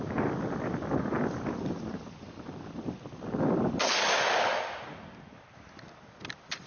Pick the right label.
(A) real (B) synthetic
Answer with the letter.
A